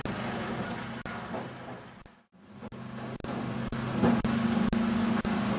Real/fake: real